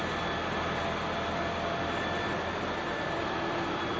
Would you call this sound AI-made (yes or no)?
no